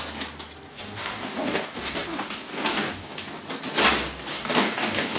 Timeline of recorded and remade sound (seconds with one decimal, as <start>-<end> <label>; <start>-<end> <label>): 0.0-0.7 recorded; 0.7-3.4 remade; 3.4-4.3 recorded; 4.3-5.2 remade